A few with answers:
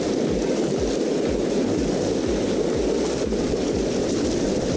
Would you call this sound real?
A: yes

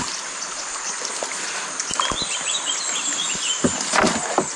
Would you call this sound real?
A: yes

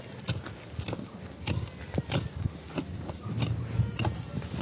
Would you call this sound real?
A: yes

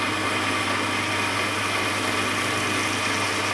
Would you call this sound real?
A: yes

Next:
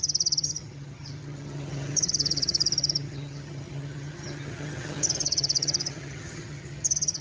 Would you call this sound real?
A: no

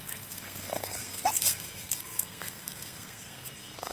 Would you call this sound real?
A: no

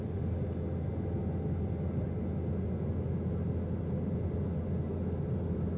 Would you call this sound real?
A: yes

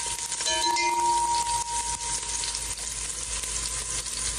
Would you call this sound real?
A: yes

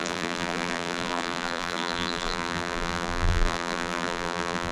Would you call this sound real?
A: no